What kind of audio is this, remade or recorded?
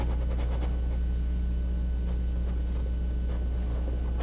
recorded